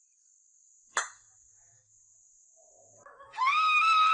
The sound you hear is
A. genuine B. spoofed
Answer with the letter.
A